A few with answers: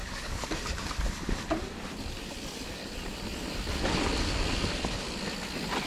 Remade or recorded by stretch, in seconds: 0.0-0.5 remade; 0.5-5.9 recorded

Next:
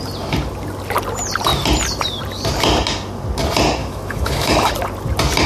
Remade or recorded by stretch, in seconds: 0.0-3.8 recorded; 3.8-4.7 remade; 4.7-5.5 recorded

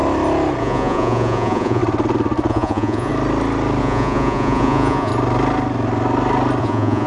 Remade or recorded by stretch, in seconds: 0.0-0.6 recorded; 0.6-1.8 remade; 1.8-2.5 recorded; 2.5-3.1 remade; 3.1-3.8 recorded; 3.8-5.1 remade; 5.1-6.6 recorded; 6.6-7.1 remade

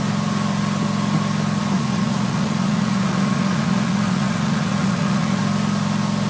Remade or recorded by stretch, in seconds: 0.0-1.6 recorded; 1.6-5.4 remade; 5.4-6.3 recorded

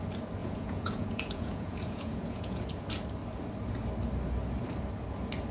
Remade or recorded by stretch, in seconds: 0.0-0.4 recorded; 0.4-2.6 remade; 2.6-5.5 recorded

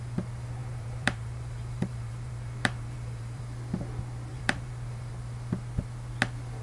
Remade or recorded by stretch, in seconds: 0.0-0.6 recorded; 0.6-3.4 remade; 3.4-4.3 recorded; 4.3-5.1 remade; 5.1-6.6 recorded